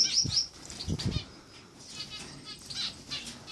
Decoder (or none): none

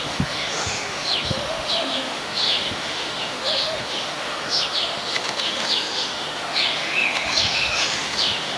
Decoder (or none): autoencoder, DAC-VAE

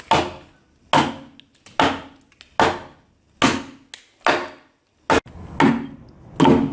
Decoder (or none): none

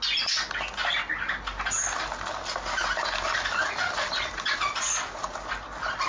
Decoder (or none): none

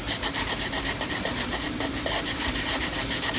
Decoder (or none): none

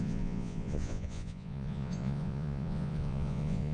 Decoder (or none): vocoder, Vocos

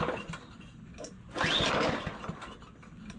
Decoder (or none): none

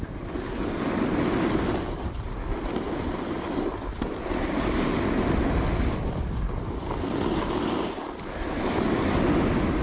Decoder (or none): none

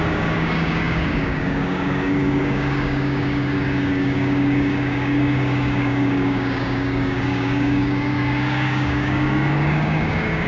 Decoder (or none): codec, DAC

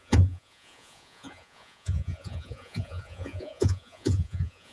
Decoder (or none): vocoder, Vocos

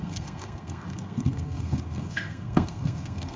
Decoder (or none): codec, SNAC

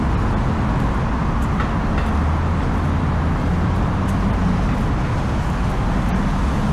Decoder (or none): none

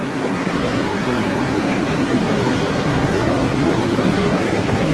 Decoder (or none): codec, SNAC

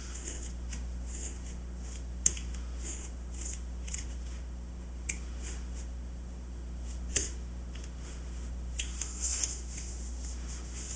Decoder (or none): autoencoder, DAC-VAE